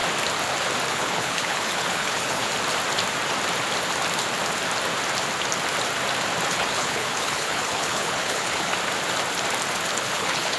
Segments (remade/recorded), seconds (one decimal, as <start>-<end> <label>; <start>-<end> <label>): 0.0-0.9 recorded; 0.9-2.5 remade; 2.5-6.5 recorded; 6.5-8.7 remade; 8.7-9.9 recorded; 9.9-10.6 remade